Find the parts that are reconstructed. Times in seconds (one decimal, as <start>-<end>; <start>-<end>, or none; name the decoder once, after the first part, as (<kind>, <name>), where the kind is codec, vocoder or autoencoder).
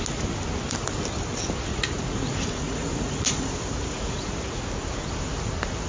1.7-4.6 (vocoder, Vocos)